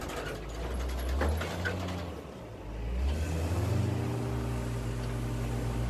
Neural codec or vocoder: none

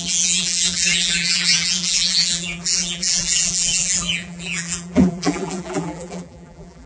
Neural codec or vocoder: vocoder, BigVGAN v2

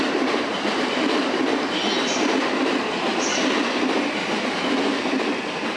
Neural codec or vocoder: none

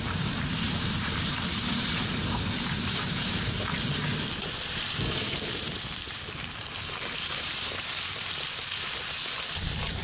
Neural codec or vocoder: vocoder, BigVGAN v2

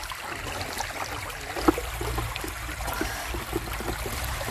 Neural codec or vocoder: none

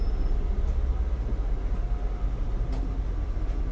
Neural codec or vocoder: none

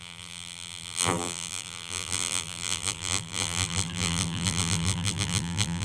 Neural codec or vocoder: vocoder, BigVGAN v2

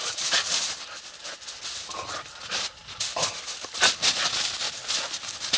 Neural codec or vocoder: none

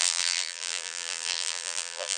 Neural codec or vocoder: vocoder, BigVGAN v2